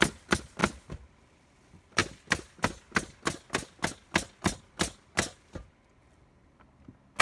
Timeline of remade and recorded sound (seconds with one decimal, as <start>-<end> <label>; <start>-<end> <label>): 0.0-7.2 recorded